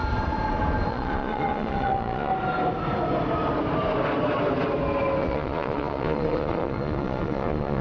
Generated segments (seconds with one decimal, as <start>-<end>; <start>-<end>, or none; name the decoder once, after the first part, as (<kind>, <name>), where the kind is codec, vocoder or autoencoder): 0.9-2.3 (vocoder, Vocos); 5.2-7.8